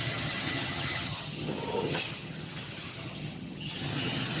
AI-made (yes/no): yes